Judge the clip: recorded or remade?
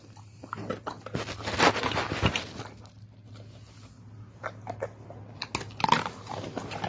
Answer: recorded